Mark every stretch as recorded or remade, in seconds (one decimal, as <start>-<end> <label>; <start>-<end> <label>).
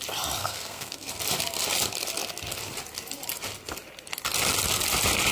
0.0-0.4 recorded; 0.4-1.1 remade; 1.1-5.3 recorded